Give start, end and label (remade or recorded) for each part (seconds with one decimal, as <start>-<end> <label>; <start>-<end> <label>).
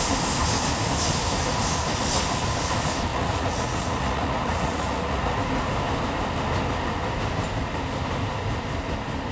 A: 0.0-3.1 recorded; 3.1-5.4 remade; 5.4-9.3 recorded